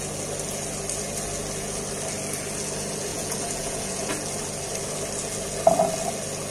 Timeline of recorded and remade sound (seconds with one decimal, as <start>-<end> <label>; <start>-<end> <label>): 0.0-3.1 recorded; 3.1-4.1 remade; 4.1-6.5 recorded